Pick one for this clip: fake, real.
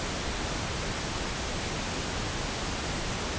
real